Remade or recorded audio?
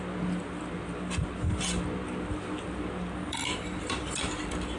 remade